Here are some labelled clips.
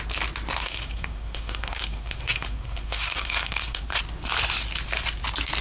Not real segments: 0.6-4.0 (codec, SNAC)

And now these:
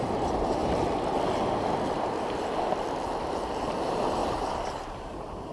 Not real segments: 0.0-0.6 (vocoder, BigVGAN v2); 3.2-5.5

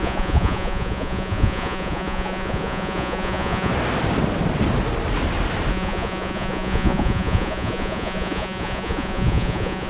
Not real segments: 0.0-3.7 (vocoder, Vocos); 5.7-9.9